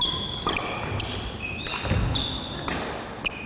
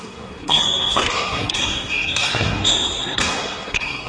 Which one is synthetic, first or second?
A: second